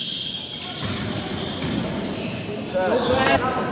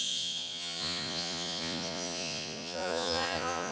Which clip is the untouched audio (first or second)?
first